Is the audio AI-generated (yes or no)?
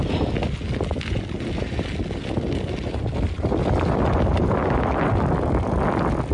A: no